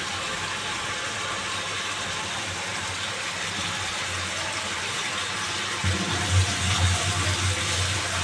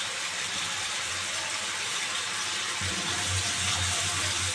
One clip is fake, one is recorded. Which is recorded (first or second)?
first